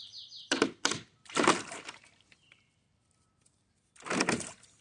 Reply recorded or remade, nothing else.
remade